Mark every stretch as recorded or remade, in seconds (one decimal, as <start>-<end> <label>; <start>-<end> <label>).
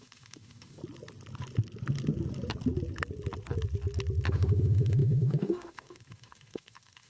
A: 0.0-0.8 remade; 0.8-4.3 recorded; 4.3-7.1 remade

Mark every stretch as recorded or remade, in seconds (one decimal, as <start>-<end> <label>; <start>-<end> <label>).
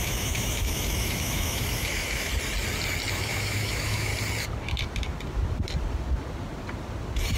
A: 0.0-2.3 remade; 2.3-3.1 recorded; 3.1-4.1 remade; 4.1-7.4 recorded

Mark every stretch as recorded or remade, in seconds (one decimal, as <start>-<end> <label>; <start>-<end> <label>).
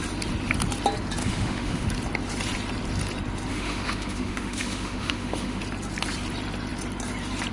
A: 0.0-1.2 recorded; 1.2-1.9 remade; 1.9-3.5 recorded; 3.5-5.6 remade; 5.6-7.5 recorded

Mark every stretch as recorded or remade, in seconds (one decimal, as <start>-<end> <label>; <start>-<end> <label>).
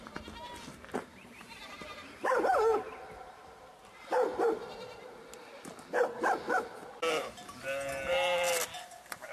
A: 0.0-9.3 recorded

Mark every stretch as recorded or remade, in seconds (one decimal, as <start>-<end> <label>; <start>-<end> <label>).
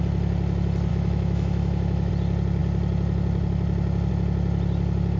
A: 0.0-0.9 recorded; 0.9-2.1 remade; 2.1-5.2 recorded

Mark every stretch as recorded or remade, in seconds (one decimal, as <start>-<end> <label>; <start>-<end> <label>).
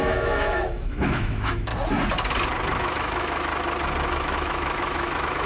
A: 0.0-1.7 remade; 1.7-2.8 recorded; 2.8-3.5 remade; 3.5-4.1 recorded; 4.1-5.5 remade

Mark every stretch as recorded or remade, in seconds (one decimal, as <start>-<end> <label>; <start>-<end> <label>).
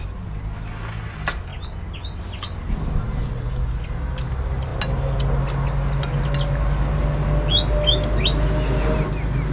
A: 0.0-9.5 recorded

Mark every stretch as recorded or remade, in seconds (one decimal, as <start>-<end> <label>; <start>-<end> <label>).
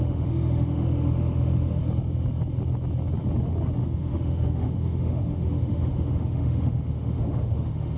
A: 0.0-1.8 remade; 1.8-3.8 recorded; 3.8-8.0 remade